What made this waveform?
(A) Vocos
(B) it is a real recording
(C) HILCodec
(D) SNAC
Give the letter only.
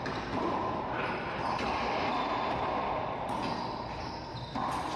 B